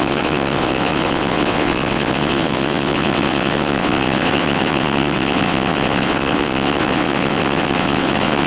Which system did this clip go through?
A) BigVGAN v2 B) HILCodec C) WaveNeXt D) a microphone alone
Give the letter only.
C